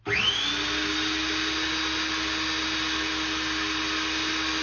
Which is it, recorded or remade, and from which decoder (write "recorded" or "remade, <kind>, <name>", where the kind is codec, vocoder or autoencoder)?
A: recorded